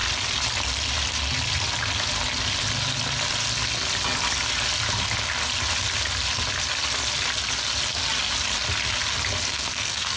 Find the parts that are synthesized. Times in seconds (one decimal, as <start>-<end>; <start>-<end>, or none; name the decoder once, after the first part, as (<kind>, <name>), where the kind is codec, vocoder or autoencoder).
9.5-10.2 (codec, SNAC)